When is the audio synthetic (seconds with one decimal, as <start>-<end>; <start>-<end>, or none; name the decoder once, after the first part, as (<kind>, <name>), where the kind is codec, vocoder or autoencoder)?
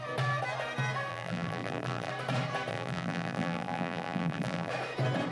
1.1-2.1 (vocoder, BigVGAN v2); 2.7-4.7